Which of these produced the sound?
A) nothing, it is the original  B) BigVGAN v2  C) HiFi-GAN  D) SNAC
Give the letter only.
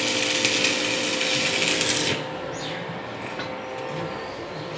A